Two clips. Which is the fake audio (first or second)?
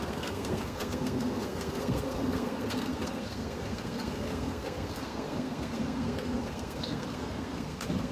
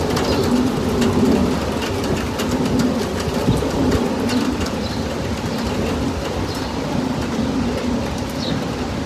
first